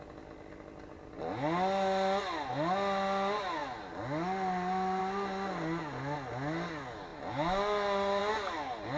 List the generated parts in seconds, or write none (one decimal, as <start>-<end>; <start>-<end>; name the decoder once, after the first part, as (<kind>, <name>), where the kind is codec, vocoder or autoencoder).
none